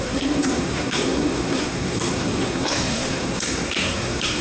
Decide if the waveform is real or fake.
fake